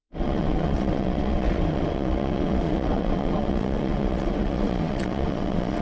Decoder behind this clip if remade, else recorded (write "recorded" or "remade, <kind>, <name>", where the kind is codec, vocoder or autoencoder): remade, vocoder, WaveNeXt